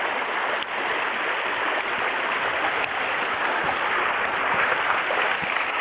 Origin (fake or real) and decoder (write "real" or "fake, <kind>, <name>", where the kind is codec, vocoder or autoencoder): real